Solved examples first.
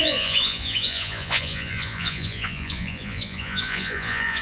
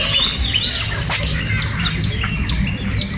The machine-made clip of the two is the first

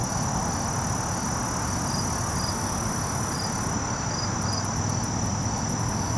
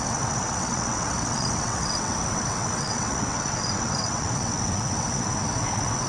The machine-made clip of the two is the second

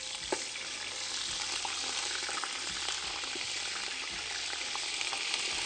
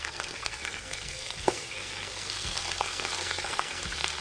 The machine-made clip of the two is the second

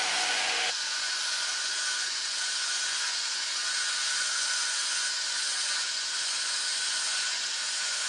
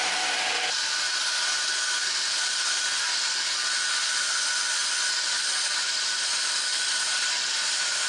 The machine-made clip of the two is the first